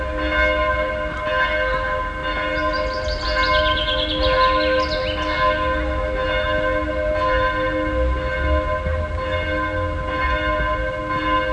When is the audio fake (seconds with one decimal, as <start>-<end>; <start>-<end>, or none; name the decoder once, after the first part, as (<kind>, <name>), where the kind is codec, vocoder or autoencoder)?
none